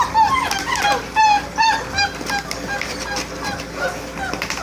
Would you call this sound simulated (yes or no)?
yes